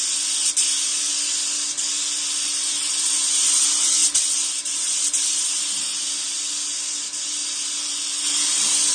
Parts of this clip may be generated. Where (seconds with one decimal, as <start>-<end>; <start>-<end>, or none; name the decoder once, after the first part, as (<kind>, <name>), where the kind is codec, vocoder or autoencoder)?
none